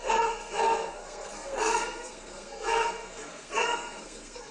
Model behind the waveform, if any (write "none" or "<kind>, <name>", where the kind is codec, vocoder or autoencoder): codec, SNAC